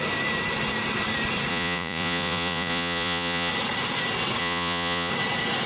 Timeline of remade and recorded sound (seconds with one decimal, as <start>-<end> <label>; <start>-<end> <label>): 0.0-1.5 recorded; 1.5-3.5 remade; 3.5-4.4 recorded; 4.4-5.1 remade; 5.1-5.7 recorded